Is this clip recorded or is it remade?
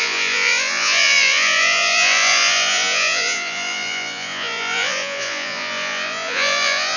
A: remade